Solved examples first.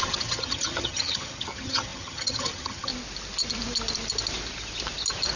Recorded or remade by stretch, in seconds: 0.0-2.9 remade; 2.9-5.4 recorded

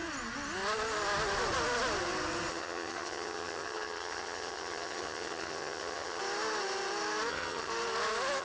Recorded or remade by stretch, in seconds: 0.0-2.5 recorded; 2.5-6.2 remade; 6.2-7.3 recorded; 7.3-7.7 remade; 7.7-8.4 recorded

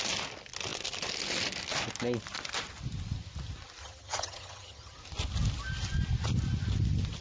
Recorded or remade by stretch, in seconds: 0.0-3.8 recorded; 3.8-5.0 remade; 5.0-7.2 recorded

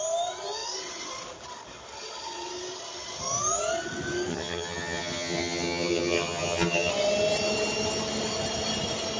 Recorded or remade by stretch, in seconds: 0.0-4.3 recorded; 4.3-6.9 remade; 6.9-9.2 recorded

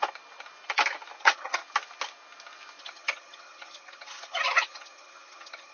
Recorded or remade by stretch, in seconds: 0.0-1.2 recorded; 1.2-1.6 remade; 1.6-2.8 recorded; 2.8-5.7 remade